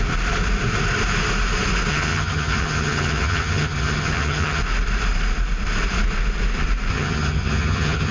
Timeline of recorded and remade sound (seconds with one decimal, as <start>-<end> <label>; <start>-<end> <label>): 0.0-1.9 recorded; 1.9-4.6 remade; 4.6-6.9 recorded; 6.9-8.1 remade